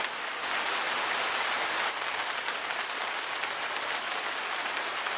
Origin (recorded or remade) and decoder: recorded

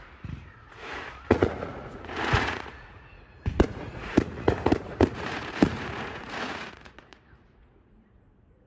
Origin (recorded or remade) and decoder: remade, vocoder, Vocos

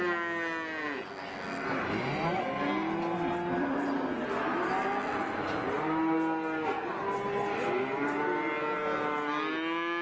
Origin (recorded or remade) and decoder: recorded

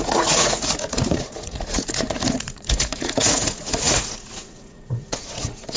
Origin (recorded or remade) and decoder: remade, vocoder, Vocos